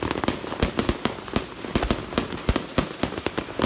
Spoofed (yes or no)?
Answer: no